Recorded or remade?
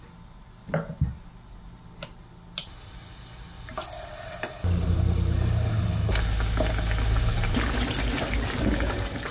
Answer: recorded